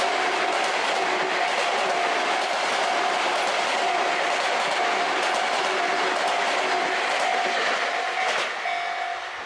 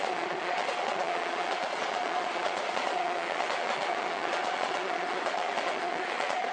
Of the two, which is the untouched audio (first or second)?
first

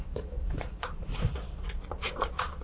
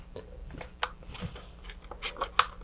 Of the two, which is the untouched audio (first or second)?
second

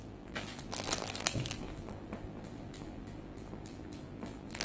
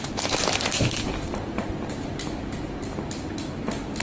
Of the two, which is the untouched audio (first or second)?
second